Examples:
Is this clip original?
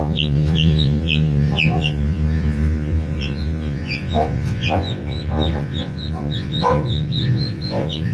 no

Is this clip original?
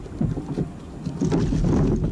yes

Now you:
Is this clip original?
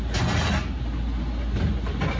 yes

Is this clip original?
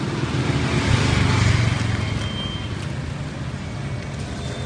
yes